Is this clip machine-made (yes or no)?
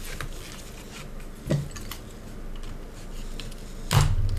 no